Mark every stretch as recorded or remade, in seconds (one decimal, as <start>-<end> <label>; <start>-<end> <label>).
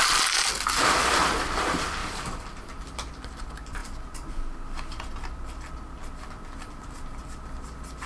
0.0-2.0 recorded; 2.0-2.8 remade; 2.8-8.1 recorded